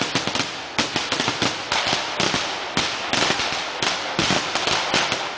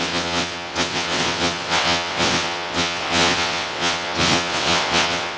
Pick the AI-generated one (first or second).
second